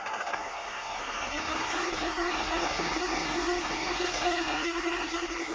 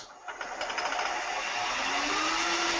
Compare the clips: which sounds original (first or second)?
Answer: second